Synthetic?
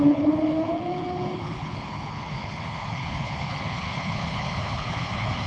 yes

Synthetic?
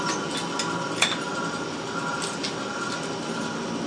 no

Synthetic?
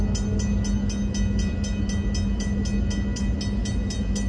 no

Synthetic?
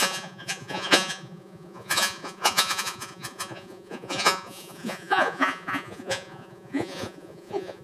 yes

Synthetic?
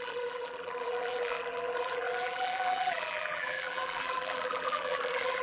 yes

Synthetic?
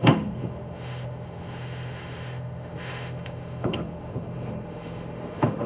yes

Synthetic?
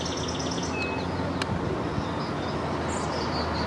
no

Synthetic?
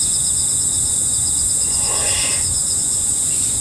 yes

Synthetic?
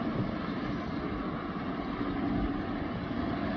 no